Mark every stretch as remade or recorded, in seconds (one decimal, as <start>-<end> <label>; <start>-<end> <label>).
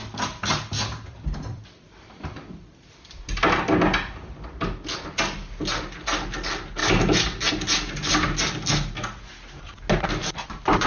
0.0-3.3 remade; 3.3-10.9 recorded